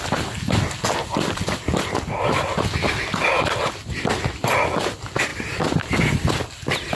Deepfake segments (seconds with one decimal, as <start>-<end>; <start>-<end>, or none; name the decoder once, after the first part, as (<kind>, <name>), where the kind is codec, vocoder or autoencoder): none